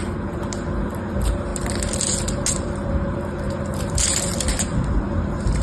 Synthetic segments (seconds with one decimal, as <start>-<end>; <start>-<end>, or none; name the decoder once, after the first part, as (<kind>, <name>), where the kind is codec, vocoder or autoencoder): none